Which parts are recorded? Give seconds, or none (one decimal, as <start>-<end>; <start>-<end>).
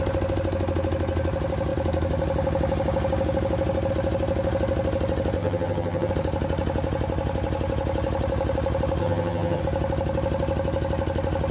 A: 0.0-5.4; 6.1-9.0; 9.6-11.5